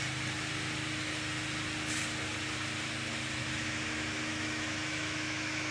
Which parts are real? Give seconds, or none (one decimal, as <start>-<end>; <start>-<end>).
0.0-4.3